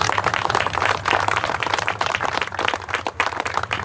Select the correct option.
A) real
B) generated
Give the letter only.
B